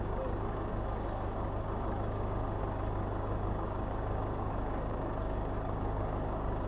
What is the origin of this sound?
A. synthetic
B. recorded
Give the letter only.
A